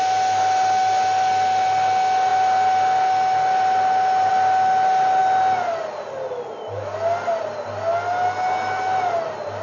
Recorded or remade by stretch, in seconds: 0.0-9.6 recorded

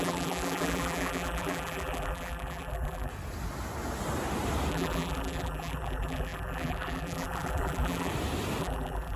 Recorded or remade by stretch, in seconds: 0.0-3.1 remade; 3.1-4.7 recorded; 4.7-8.1 remade; 8.1-8.6 recorded; 8.6-9.2 remade

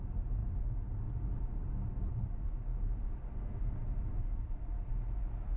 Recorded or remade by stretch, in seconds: 0.0-4.0 recorded; 4.0-4.9 remade; 4.9-5.6 recorded

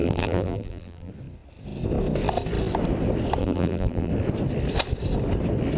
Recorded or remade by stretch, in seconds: 0.0-1.1 remade; 1.1-3.4 recorded; 3.4-4.1 remade; 4.1-5.8 recorded